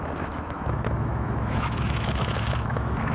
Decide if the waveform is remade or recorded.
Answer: remade